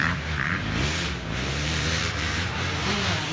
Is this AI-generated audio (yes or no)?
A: yes